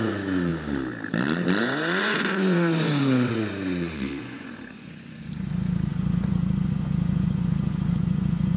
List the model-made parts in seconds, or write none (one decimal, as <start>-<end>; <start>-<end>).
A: 0.0-0.5; 1.6-8.6